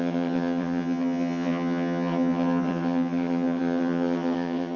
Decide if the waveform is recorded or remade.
remade